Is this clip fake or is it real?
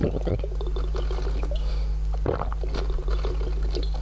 real